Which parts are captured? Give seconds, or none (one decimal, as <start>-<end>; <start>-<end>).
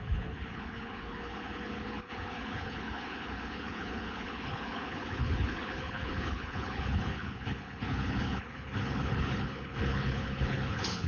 none